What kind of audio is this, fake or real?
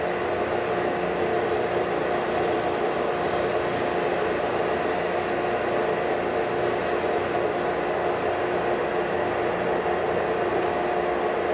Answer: real